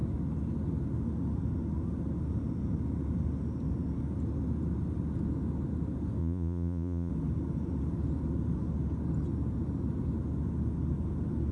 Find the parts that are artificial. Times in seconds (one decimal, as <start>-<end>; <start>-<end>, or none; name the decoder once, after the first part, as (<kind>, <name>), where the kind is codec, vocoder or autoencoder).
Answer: 6.2-7.1 (vocoder, Vocos)